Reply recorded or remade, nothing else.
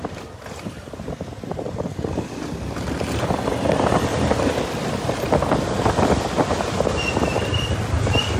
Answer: recorded